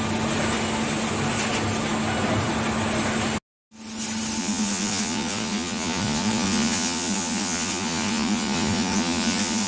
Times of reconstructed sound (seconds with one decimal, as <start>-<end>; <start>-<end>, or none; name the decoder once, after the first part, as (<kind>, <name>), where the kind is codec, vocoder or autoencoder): 4.4-9.7 (vocoder, Vocos)